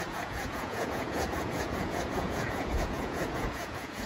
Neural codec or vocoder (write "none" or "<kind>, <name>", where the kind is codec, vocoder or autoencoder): vocoder, Vocos